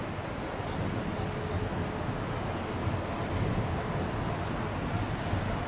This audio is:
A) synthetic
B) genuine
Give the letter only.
B